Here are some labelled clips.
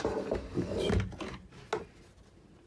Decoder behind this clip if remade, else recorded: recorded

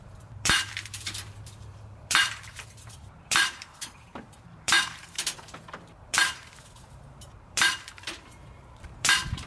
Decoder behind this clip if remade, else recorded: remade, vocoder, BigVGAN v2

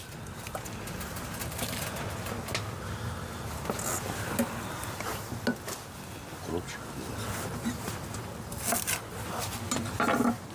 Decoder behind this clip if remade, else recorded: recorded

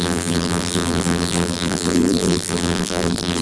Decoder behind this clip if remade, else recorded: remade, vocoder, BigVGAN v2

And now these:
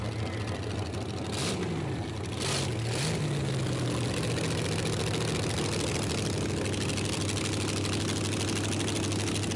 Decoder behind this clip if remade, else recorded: recorded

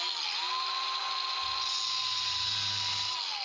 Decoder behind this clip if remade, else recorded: recorded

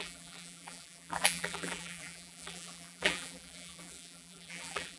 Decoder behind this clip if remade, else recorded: remade, vocoder, BigVGAN v2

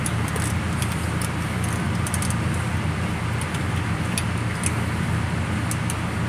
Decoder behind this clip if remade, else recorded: recorded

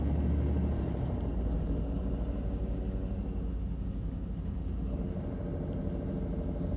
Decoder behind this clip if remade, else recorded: recorded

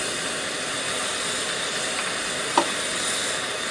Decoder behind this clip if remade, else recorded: recorded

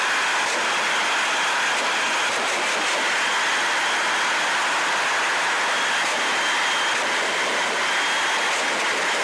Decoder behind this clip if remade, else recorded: recorded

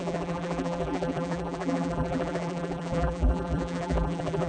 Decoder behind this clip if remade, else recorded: remade, vocoder, BigVGAN v2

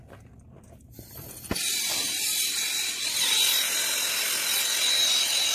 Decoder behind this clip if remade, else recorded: recorded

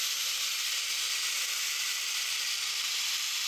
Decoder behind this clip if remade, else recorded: remade, vocoder, BigVGAN v2